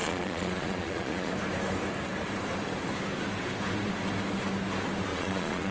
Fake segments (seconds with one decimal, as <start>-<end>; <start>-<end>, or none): 0.0-1.3; 5.1-5.7